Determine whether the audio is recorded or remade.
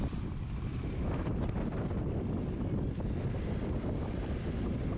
remade